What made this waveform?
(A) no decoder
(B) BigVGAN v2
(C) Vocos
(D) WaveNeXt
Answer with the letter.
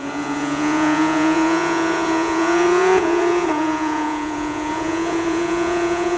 C